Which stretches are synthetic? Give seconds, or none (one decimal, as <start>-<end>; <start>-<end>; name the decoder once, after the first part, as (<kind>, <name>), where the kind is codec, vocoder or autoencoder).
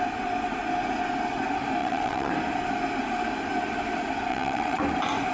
1.8-2.3 (vocoder, WaveNeXt); 4.3-4.8